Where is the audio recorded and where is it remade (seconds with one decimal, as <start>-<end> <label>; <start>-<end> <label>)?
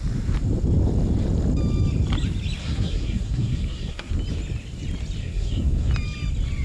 0.0-2.6 recorded; 2.6-4.1 remade; 4.1-5.2 recorded; 5.2-5.9 remade; 5.9-6.6 recorded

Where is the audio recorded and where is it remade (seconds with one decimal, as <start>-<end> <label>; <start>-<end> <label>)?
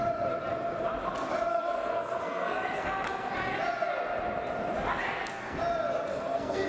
0.0-1.5 recorded; 1.5-3.3 remade; 3.3-4.9 recorded; 4.9-5.6 remade; 5.6-6.1 recorded; 6.1-6.7 remade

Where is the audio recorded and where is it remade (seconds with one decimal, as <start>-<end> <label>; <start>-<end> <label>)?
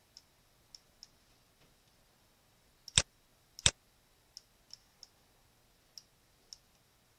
0.0-7.2 recorded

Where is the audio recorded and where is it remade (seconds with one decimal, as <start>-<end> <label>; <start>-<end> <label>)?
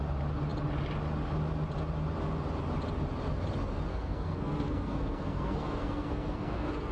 0.0-3.9 recorded; 3.9-6.9 remade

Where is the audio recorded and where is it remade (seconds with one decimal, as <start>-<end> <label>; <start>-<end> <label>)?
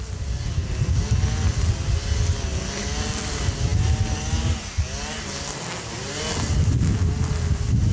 0.0-7.9 recorded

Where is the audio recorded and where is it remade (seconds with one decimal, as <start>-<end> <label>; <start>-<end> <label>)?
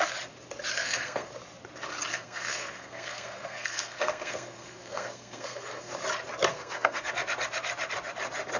0.0-0.7 recorded; 0.7-1.3 remade; 1.3-2.1 recorded; 2.1-5.9 remade; 5.9-6.5 recorded; 6.5-7.1 remade; 7.1-8.6 recorded